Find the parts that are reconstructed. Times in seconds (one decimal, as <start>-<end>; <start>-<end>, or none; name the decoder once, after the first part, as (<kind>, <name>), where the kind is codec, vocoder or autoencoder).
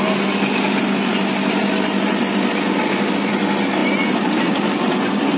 none